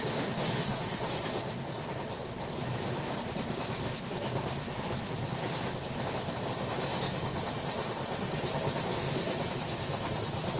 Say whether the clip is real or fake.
fake